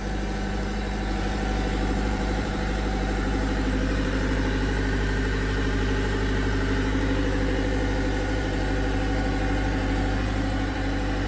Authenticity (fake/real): fake